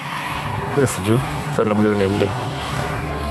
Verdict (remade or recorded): remade